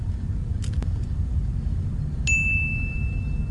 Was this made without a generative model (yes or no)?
yes